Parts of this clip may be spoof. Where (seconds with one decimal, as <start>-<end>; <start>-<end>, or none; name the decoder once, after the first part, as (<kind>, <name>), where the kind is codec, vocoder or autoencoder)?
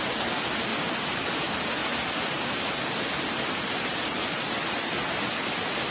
none